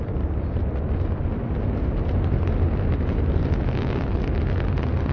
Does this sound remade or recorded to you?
recorded